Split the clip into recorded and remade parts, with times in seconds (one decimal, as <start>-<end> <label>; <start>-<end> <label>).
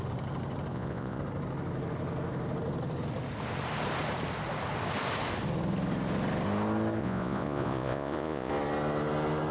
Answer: 0.0-0.7 recorded; 0.7-1.2 remade; 1.2-7.0 recorded; 7.0-8.5 remade; 8.5-9.5 recorded